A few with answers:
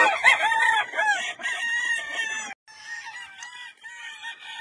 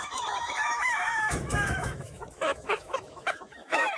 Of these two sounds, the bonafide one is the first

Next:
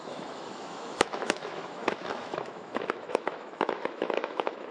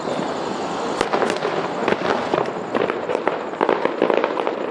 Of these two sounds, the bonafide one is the second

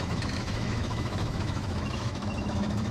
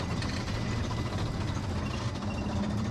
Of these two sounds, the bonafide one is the second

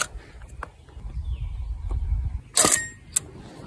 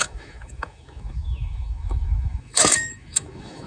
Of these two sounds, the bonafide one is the first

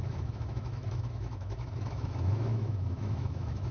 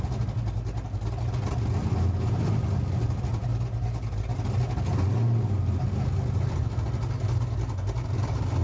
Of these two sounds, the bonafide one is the second